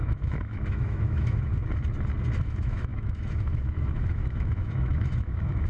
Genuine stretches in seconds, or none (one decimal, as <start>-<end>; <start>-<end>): 1.5-2.4